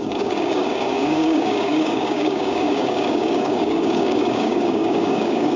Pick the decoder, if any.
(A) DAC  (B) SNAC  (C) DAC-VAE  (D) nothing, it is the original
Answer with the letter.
A